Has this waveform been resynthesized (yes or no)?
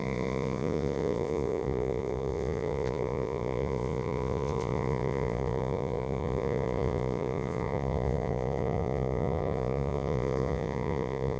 yes